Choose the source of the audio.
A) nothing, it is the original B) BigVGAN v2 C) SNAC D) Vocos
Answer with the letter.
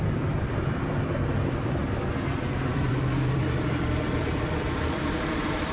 B